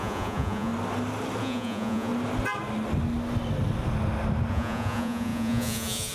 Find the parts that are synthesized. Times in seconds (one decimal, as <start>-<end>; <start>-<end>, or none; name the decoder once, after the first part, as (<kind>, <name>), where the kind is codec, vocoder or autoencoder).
0.0-0.7 (vocoder, Vocos); 1.4-2.1; 4.5-6.1